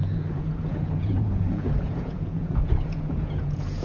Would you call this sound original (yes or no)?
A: no